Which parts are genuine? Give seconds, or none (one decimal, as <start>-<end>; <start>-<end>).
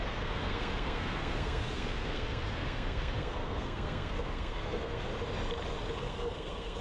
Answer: 5.1-5.9